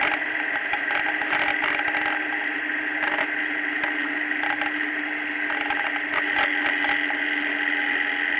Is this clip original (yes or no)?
yes